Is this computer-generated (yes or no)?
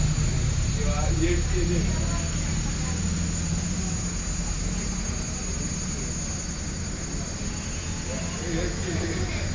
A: no